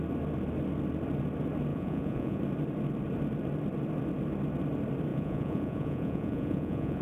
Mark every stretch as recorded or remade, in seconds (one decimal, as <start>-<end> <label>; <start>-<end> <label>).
0.0-1.7 recorded; 1.7-2.4 remade; 2.4-5.1 recorded; 5.1-7.0 remade